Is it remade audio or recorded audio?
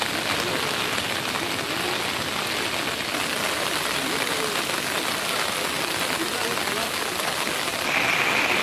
recorded